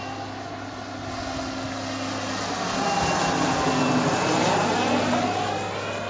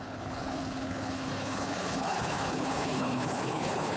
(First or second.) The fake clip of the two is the second